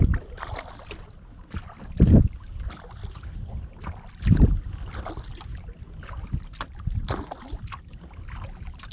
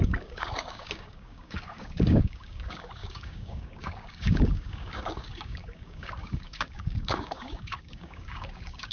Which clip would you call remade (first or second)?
second